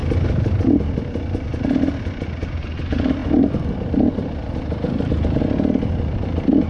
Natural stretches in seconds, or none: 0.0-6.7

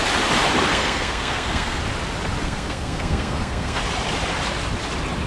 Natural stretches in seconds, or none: 0.0-0.7; 1.8-2.4; 3.8-5.3

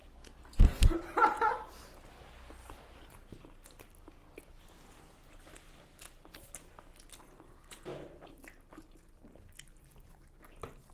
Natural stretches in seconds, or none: 0.0-10.9

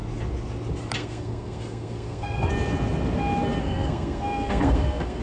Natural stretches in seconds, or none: 0.0-1.0; 2.5-3.6

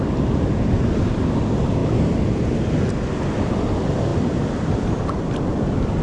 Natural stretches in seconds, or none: 0.0-6.0

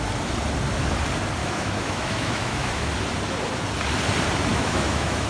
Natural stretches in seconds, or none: 0.0-1.4; 2.9-4.5